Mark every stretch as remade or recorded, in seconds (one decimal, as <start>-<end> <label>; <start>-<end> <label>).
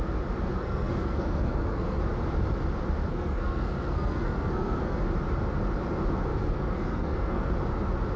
0.0-0.5 recorded; 0.5-2.0 remade; 2.0-3.1 recorded; 3.1-5.0 remade; 5.0-6.3 recorded; 6.3-7.5 remade; 7.5-8.2 recorded